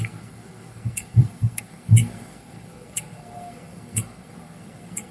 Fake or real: fake